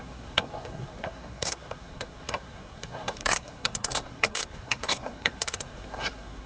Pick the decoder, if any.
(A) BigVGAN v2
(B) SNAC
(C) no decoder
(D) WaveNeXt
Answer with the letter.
B